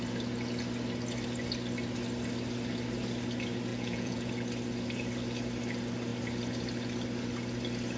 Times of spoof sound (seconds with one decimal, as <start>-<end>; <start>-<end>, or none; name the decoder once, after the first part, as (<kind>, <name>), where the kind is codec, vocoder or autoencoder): 3.7-4.3 (vocoder, Vocos)